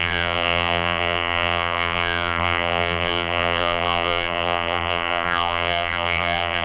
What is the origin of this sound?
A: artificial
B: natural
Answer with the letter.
A